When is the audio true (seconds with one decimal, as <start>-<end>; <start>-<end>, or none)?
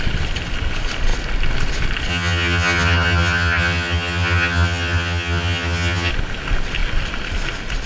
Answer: 0.0-2.1; 6.1-7.9